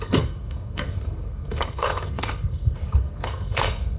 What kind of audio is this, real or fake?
fake